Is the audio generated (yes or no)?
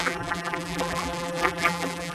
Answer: yes